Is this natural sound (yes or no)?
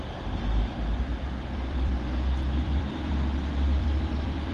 no